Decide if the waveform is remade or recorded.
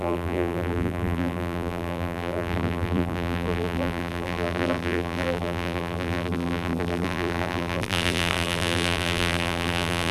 remade